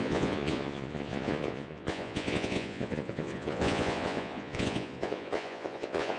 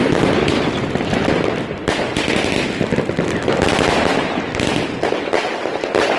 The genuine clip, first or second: second